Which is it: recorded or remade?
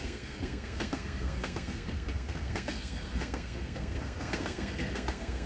remade